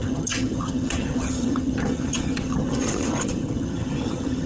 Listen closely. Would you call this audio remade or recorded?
remade